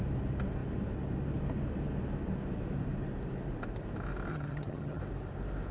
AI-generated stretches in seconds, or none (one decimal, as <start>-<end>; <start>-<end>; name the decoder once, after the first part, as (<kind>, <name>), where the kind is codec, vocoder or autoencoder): 4.3-5.0 (vocoder, HiFi-GAN)